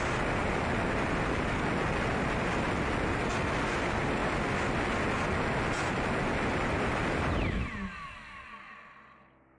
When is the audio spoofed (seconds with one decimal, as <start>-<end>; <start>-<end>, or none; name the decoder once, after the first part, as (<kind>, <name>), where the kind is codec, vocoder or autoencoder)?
none